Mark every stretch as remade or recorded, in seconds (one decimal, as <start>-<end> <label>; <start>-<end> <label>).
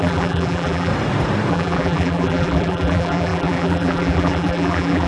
0.0-0.9 remade; 0.9-1.5 recorded; 1.5-5.1 remade